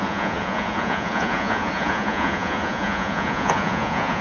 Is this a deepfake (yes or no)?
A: yes